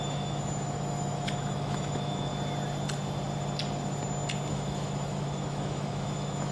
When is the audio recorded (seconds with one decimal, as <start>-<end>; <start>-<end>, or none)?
2.3-4.5